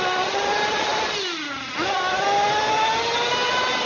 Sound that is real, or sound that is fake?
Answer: real